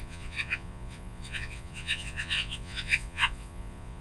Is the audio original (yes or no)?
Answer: no